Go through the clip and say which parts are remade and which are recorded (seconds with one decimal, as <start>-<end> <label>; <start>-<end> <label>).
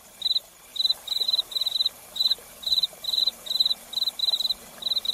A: 0.0-0.7 recorded; 0.7-3.8 remade; 3.8-5.1 recorded